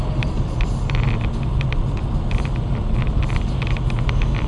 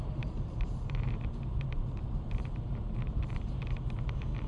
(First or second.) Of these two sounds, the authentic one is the first